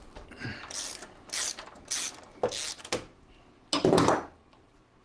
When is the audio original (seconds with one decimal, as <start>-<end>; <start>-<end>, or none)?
0.0-5.0